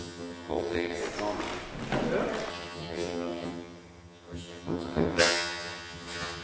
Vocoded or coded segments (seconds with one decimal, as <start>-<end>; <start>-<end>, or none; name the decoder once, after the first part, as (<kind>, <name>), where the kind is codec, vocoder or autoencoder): 0.0-1.0 (vocoder, HiFi-GAN); 2.5-6.4